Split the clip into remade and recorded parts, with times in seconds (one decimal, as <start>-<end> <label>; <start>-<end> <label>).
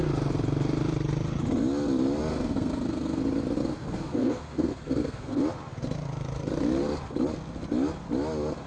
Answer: 0.0-2.3 recorded; 2.3-3.2 remade; 3.2-3.7 recorded; 3.7-5.4 remade; 5.4-8.7 recorded